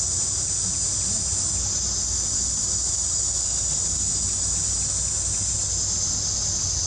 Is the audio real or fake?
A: real